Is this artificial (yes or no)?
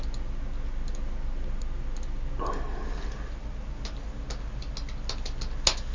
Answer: no